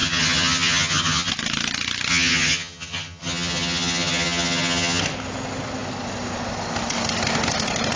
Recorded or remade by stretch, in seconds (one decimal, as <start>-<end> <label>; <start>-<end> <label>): 0.0-1.3 remade; 1.3-2.1 recorded; 2.1-5.0 remade; 5.0-8.0 recorded